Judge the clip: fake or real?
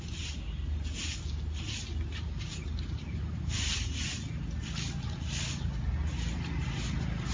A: real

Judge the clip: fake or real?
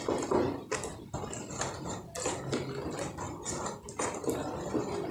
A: real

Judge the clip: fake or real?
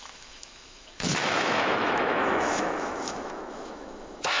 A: fake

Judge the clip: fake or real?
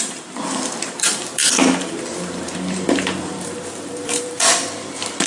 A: fake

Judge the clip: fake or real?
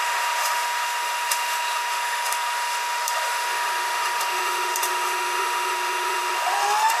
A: fake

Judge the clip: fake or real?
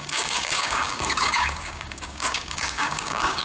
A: fake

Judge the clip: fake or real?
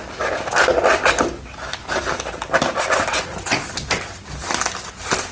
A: real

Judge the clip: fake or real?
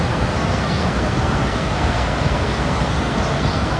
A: fake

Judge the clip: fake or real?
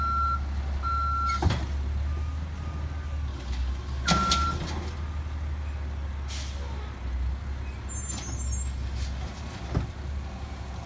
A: real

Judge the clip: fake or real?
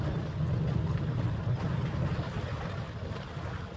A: real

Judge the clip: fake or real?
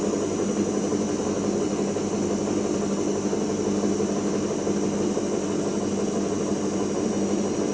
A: real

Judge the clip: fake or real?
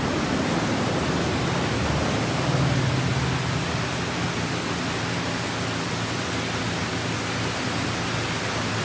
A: real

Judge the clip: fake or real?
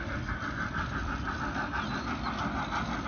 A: real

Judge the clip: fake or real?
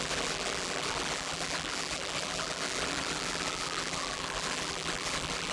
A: fake